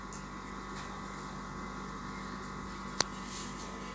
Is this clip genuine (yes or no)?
yes